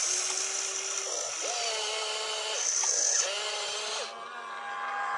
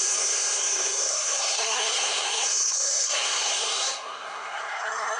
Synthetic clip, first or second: second